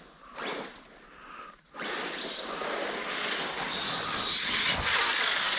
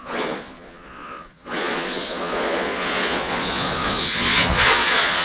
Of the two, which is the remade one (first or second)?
second